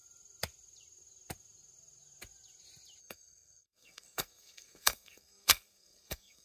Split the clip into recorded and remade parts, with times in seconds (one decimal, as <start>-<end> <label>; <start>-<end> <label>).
0.0-3.0 recorded; 3.0-6.4 remade